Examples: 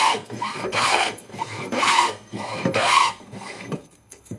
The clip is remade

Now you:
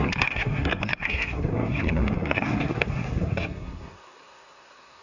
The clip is remade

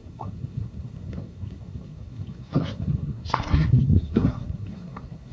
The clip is remade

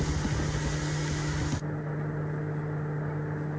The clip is recorded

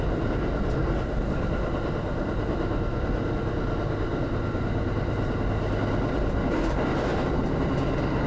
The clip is recorded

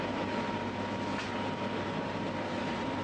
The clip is recorded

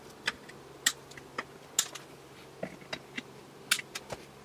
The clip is recorded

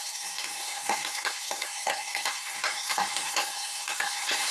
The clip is remade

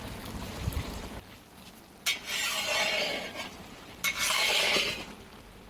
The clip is recorded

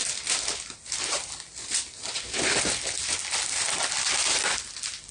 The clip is recorded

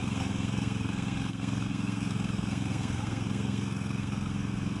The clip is remade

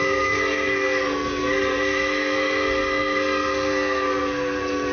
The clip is remade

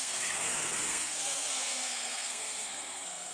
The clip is remade